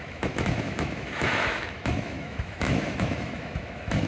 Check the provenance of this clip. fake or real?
fake